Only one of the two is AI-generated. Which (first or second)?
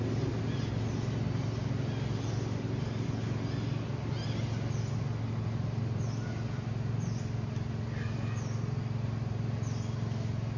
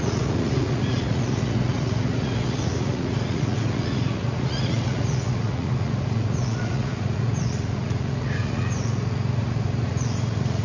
second